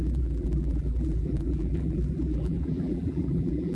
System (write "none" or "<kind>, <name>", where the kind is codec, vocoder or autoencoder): vocoder, BigVGAN v2